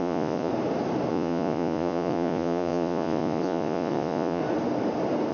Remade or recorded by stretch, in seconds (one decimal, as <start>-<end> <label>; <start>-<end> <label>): 0.0-0.5 remade; 0.5-1.1 recorded; 1.1-4.4 remade; 4.4-5.3 recorded